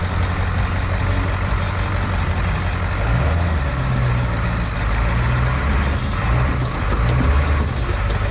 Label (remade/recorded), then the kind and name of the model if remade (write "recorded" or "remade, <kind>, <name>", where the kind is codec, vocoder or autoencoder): recorded